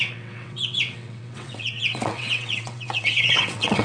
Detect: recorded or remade remade